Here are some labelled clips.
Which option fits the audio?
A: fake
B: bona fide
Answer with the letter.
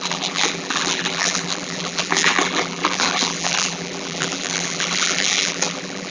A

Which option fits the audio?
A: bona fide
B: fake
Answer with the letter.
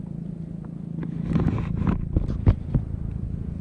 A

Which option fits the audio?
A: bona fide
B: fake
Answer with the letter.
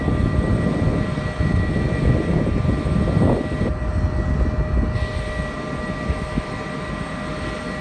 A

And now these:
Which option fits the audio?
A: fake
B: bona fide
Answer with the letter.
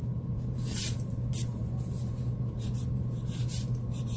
A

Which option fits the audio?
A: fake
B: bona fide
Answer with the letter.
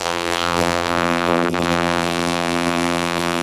A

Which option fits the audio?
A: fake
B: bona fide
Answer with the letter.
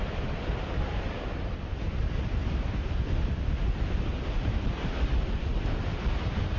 A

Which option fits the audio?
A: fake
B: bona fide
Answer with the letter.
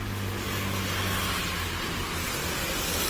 B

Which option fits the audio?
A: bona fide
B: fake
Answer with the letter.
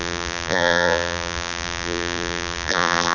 B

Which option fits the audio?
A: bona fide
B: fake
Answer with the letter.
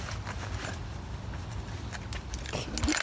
A